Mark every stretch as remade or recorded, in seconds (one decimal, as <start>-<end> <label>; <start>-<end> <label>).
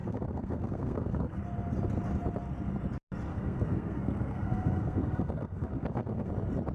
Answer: 0.0-1.4 remade; 1.4-3.3 recorded; 3.3-6.3 remade; 6.3-6.7 recorded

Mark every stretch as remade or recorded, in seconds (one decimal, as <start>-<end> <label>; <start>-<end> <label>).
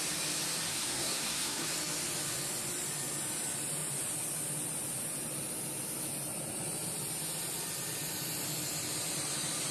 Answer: 0.0-0.7 recorded; 0.7-1.7 remade; 1.7-9.7 recorded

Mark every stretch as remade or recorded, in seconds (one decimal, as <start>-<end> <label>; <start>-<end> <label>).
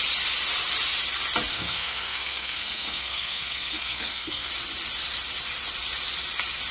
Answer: 0.0-1.5 recorded; 1.5-4.5 remade; 4.5-6.7 recorded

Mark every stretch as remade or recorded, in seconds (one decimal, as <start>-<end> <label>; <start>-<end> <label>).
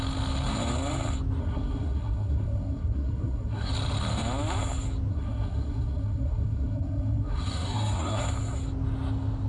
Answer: 0.0-1.4 recorded; 1.4-3.7 remade; 3.7-5.1 recorded; 5.1-8.2 remade; 8.2-9.5 recorded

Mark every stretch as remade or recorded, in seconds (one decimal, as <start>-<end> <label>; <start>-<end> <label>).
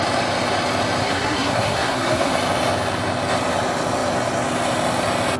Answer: 0.0-1.0 recorded; 1.0-2.3 remade; 2.3-5.4 recorded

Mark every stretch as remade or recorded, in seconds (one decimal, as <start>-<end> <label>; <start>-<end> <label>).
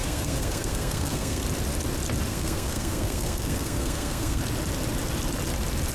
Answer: 0.0-1.4 remade; 1.4-2.3 recorded; 2.3-4.4 remade; 4.4-5.9 recorded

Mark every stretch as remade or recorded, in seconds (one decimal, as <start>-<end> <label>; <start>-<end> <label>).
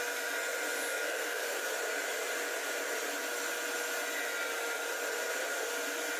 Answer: 0.0-0.9 recorded; 0.9-1.6 remade; 1.6-6.2 recorded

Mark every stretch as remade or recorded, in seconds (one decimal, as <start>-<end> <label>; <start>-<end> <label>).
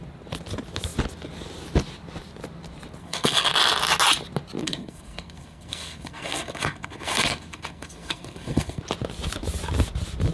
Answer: 0.0-3.0 recorded; 3.0-3.5 remade; 3.5-4.6 recorded; 4.6-8.8 remade; 8.8-10.3 recorded